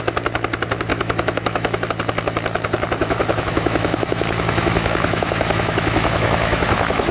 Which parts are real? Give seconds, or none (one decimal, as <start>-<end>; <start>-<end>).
0.0-0.9; 1.9-3.0